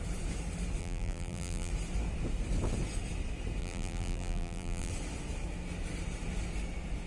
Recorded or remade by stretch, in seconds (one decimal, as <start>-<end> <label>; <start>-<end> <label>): 0.0-0.8 recorded; 0.8-1.7 remade; 1.7-3.6 recorded; 3.6-4.9 remade; 4.9-7.1 recorded